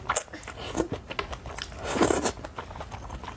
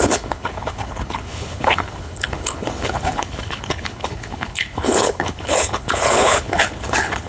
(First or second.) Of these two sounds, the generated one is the second